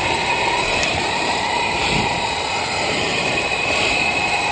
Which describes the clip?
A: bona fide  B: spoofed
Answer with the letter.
B